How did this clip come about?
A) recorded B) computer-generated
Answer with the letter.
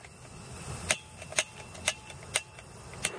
A